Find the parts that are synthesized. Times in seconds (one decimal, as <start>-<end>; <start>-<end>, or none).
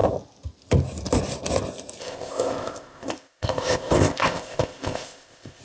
2.0-5.6